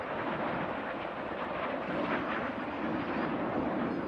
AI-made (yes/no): no